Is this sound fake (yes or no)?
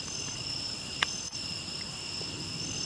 no